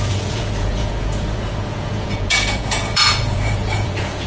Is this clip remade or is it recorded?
remade